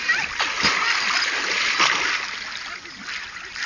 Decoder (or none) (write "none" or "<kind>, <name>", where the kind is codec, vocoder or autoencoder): none